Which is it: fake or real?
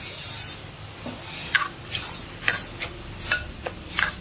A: real